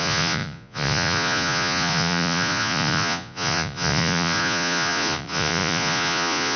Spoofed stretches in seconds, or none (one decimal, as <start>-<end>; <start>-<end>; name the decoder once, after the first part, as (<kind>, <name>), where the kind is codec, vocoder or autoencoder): 0.0-6.6 (vocoder, Vocos)